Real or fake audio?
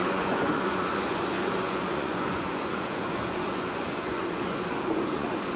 fake